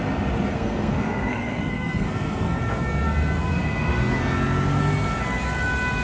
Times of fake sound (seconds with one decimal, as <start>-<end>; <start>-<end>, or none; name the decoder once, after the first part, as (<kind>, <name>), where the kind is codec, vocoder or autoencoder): 0.5-2.6 (codec, SNAC); 3.5-4.2